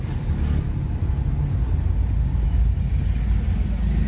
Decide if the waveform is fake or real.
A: real